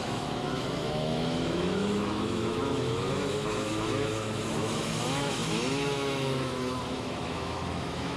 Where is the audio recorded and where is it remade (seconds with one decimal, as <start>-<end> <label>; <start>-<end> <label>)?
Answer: 0.0-8.2 remade